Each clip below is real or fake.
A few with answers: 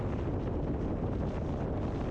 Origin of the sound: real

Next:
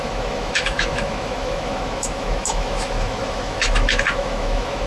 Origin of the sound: fake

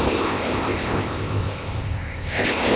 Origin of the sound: fake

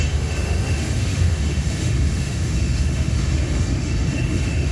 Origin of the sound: fake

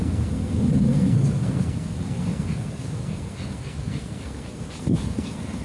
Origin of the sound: fake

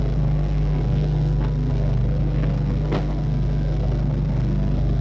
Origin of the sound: fake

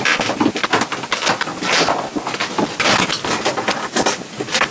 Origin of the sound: real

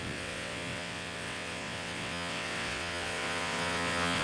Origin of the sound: fake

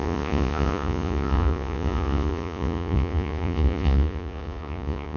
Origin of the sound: fake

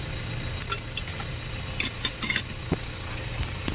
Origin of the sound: real